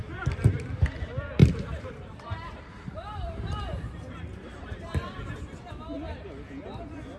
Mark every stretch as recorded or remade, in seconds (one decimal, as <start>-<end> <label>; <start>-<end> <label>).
0.0-1.4 recorded; 1.4-5.7 remade; 5.7-7.2 recorded